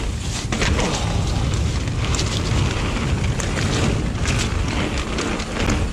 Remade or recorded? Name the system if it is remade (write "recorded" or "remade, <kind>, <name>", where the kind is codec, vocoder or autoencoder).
recorded